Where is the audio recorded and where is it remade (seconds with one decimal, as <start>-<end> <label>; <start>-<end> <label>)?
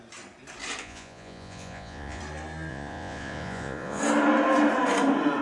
0.0-0.8 recorded; 0.8-2.2 remade; 2.2-2.7 recorded; 2.7-4.0 remade; 4.0-5.4 recorded